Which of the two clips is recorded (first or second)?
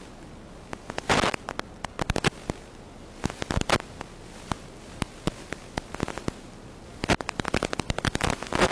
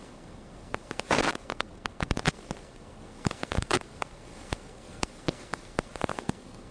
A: first